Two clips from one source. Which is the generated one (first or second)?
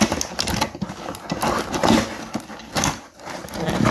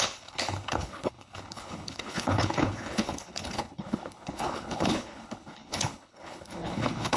second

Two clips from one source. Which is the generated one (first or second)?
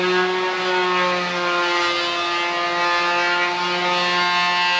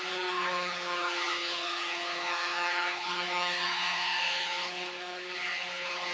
second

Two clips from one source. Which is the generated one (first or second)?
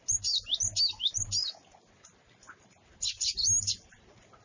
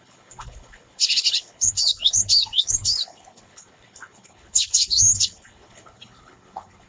second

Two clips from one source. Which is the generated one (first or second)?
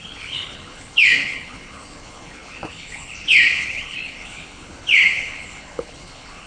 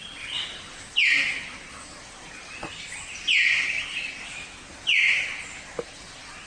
first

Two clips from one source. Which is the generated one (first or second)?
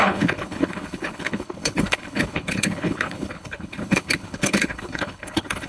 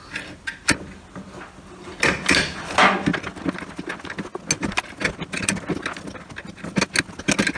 first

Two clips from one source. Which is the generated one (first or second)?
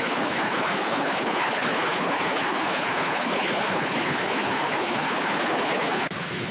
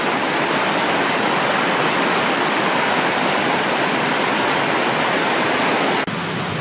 first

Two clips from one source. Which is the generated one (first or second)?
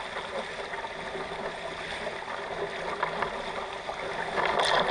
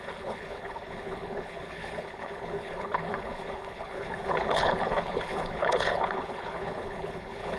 second